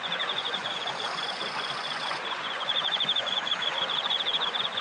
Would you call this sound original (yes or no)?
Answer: no